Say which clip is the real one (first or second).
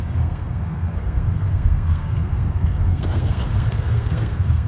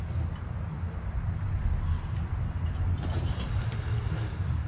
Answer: second